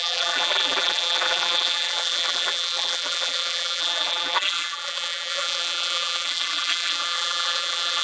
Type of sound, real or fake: fake